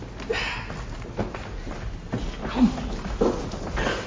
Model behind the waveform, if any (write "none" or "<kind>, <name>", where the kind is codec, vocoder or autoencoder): none